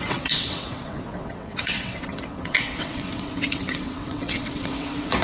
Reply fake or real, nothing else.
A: fake